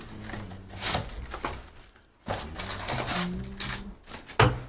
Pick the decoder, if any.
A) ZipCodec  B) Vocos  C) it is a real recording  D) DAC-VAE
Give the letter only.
C